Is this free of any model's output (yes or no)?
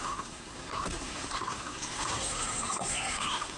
no